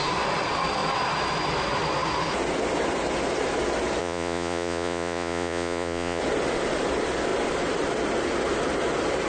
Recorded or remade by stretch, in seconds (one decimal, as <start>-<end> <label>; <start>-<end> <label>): 0.0-4.0 recorded; 4.0-6.2 remade; 6.2-9.3 recorded